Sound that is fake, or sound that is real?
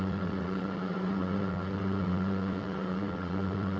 fake